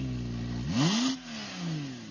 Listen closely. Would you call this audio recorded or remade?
recorded